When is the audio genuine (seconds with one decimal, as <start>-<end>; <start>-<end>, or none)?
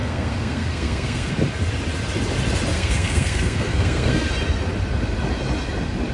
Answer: 1.3-2.7; 4.3-6.1